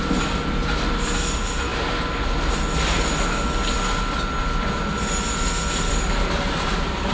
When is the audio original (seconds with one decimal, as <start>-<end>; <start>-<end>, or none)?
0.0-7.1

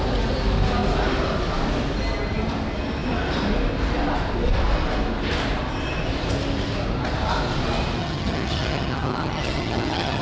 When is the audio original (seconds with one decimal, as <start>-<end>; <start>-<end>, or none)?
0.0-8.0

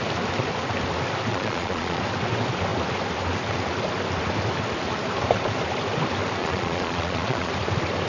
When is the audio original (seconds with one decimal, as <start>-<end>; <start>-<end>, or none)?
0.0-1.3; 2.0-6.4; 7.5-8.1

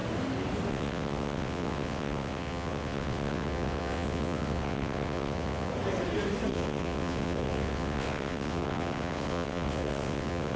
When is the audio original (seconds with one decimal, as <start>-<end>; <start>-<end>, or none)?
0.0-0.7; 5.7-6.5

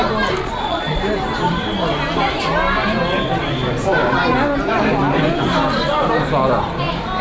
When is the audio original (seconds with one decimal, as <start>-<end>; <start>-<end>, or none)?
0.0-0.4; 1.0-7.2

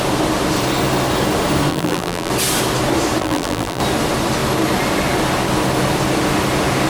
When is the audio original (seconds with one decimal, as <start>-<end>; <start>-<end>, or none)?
0.0-1.7; 2.3-3.2; 3.8-6.9

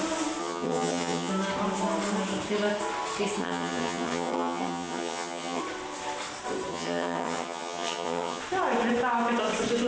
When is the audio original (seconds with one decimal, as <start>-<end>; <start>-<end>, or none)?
0.0-0.4; 1.3-3.4; 5.6-6.7; 8.4-9.9